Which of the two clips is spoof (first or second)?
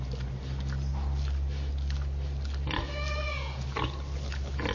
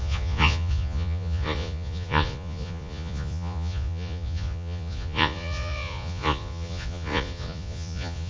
second